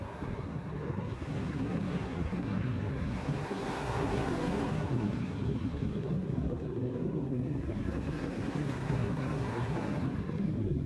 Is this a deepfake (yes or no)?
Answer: yes